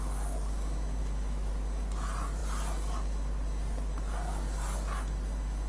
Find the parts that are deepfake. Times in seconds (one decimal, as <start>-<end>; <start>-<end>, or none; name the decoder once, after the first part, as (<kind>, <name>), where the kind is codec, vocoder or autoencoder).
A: 1.0-1.5 (autoencoder, DAC-VAE)